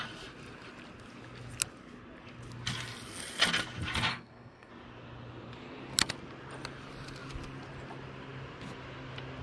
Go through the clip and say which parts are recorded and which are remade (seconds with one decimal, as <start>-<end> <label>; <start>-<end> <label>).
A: 0.0-4.1 recorded; 4.1-4.7 remade; 4.7-9.4 recorded